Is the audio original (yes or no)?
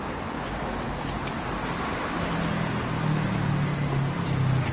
yes